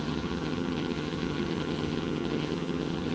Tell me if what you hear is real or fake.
fake